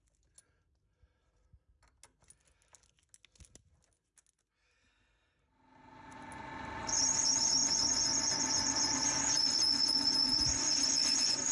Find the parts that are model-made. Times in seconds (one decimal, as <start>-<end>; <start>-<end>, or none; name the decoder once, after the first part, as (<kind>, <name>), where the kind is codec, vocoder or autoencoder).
7.6-11.5 (vocoder, Vocos)